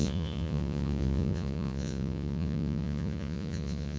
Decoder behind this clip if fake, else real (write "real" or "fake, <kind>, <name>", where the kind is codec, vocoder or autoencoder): fake, vocoder, Vocos